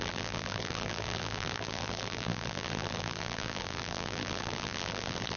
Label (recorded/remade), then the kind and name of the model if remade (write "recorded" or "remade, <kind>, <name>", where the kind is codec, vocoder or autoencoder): remade, vocoder, BigVGAN v2